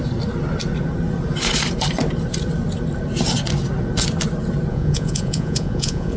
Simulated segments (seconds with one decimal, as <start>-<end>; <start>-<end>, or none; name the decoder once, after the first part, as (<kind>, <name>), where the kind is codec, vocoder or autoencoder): 4.7-6.2 (vocoder, Vocos)